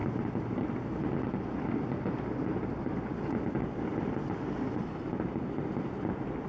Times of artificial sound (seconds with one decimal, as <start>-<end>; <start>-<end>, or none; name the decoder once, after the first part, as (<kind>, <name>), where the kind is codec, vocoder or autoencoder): none

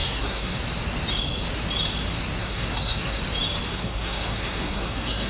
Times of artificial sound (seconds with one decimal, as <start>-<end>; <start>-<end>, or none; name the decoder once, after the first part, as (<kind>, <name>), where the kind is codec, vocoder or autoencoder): 0.0-0.6 (codec, SNAC); 2.4-3.2; 3.7-5.3

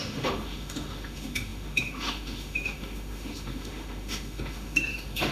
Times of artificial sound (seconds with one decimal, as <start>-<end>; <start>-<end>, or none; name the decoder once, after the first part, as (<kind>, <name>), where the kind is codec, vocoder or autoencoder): 0.0-5.3 (autoencoder, DAC-VAE)

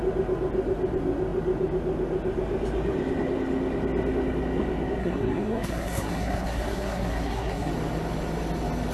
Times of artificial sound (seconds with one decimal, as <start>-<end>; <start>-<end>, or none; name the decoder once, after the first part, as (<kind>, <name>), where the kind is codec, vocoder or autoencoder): 5.0-7.7 (codec, SNAC)

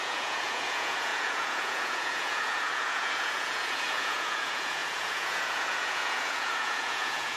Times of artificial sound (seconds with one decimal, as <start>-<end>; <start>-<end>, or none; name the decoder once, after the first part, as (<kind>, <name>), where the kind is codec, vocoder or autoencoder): 0.0-7.4 (vocoder, Vocos)